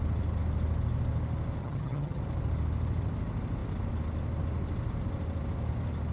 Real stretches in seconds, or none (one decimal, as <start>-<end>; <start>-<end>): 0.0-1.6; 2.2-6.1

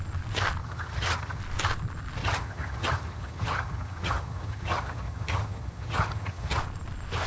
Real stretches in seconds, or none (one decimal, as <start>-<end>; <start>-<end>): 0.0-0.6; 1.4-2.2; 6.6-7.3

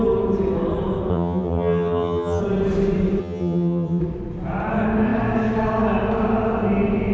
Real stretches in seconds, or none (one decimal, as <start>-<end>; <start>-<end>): 0.0-1.1; 2.4-3.2; 4.0-7.1

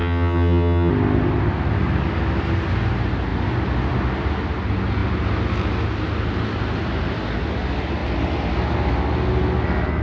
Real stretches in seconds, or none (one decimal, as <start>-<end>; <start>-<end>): 0.9-10.0